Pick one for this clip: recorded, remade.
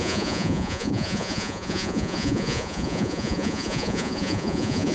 remade